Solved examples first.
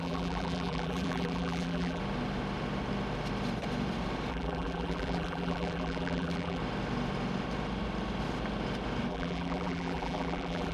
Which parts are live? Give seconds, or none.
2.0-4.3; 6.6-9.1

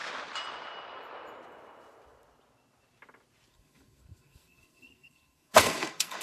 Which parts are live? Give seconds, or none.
0.0-3.5

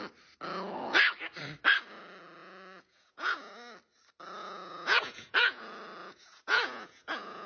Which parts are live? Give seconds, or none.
0.0-2.4; 3.5-4.4; 5.6-6.0

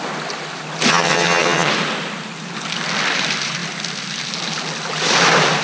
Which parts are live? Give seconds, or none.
0.0-0.9; 1.7-5.6